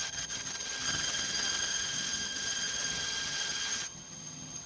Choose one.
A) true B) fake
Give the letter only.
B